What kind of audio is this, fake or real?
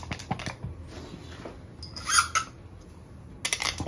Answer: real